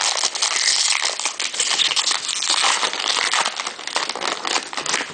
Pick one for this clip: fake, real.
real